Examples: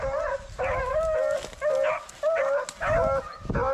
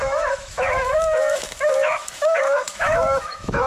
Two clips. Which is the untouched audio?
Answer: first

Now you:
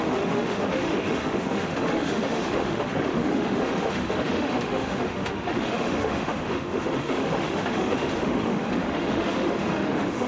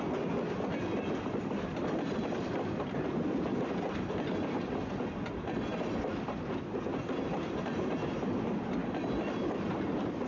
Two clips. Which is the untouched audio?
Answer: second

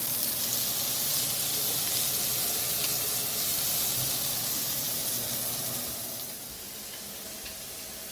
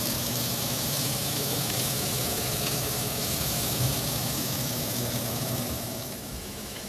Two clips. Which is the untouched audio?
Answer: first